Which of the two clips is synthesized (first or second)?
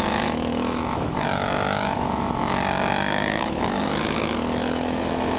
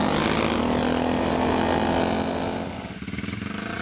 first